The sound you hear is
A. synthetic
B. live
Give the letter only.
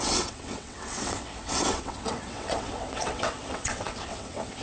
A